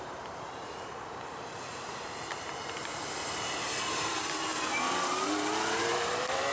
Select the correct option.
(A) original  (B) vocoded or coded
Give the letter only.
B